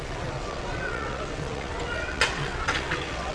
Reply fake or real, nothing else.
fake